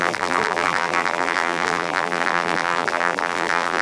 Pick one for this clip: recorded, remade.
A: remade